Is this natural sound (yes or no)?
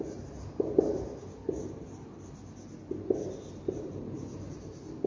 yes